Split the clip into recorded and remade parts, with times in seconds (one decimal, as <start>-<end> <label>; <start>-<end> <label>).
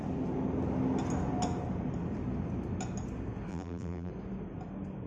0.0-3.5 recorded; 3.5-4.1 remade; 4.1-5.1 recorded